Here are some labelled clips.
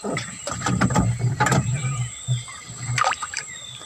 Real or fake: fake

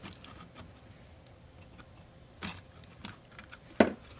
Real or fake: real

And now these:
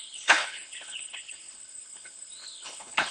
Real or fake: fake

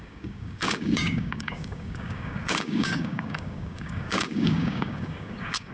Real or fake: fake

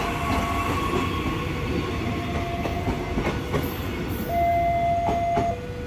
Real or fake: real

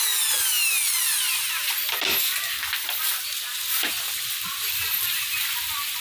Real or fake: real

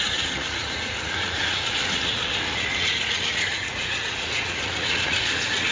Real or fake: fake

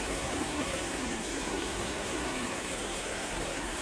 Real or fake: fake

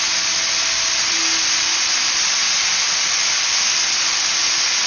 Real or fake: real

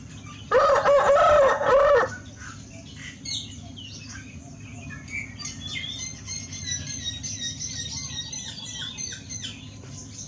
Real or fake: real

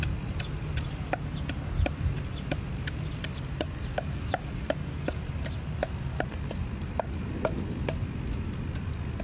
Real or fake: real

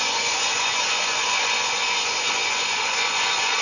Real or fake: fake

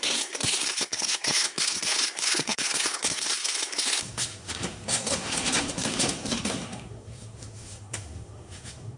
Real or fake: fake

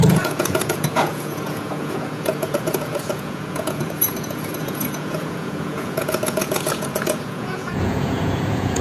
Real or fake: fake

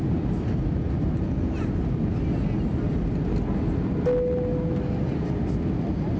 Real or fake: real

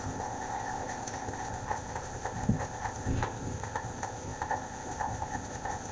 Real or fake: fake